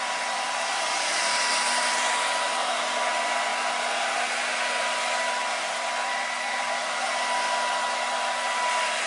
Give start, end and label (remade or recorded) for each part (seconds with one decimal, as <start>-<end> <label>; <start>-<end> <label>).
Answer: 0.0-9.1 recorded